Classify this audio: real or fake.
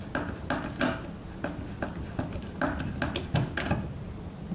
real